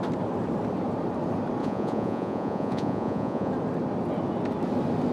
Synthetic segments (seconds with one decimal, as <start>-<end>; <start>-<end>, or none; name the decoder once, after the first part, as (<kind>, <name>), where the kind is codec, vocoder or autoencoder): 1.6-3.5 (vocoder, Vocos)